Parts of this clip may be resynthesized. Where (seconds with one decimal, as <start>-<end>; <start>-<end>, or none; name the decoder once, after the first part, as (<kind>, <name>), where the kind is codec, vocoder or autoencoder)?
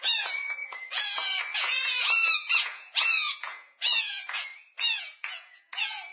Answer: 0.0-4.5 (vocoder, Vocos); 5.0-6.1